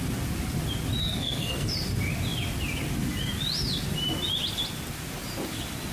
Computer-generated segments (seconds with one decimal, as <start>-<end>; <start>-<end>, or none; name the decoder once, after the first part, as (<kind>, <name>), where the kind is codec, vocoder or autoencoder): 1.0-1.7 (codec, SNAC)